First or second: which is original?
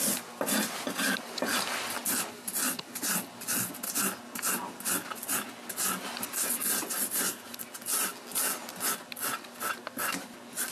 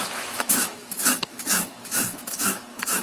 first